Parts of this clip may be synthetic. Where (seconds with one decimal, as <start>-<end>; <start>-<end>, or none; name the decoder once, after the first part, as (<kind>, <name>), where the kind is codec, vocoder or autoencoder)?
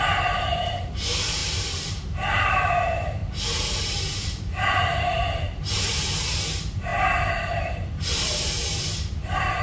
0.0-3.2 (vocoder, BigVGAN v2); 3.8-9.6